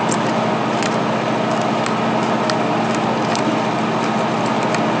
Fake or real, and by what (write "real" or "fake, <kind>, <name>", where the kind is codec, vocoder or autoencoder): real